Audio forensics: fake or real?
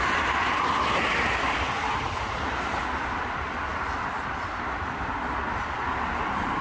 real